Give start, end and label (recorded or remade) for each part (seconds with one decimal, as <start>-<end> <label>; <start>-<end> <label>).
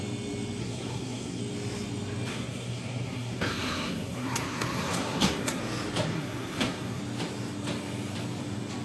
0.0-0.6 recorded; 0.6-1.4 remade; 1.4-2.3 recorded; 2.3-5.6 remade; 5.6-6.1 recorded; 6.1-7.0 remade; 7.0-8.8 recorded